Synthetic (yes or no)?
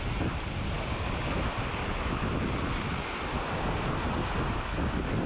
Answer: no